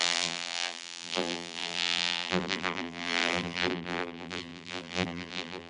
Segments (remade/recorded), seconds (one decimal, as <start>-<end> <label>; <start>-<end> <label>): 0.0-5.7 remade